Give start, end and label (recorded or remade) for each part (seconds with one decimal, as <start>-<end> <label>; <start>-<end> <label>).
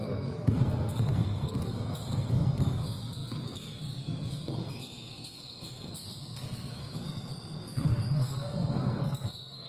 0.0-9.7 remade